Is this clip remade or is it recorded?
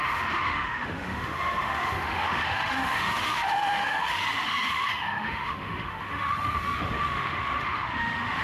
remade